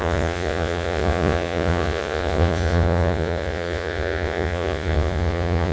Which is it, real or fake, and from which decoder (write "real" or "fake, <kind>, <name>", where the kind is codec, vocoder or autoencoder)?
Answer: fake, vocoder, Vocos